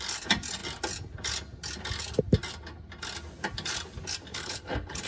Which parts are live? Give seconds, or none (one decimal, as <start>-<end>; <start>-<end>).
0.0-4.3